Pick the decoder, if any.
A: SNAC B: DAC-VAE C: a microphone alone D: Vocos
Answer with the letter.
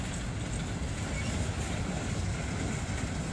C